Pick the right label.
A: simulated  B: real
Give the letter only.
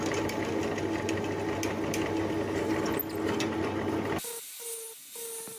B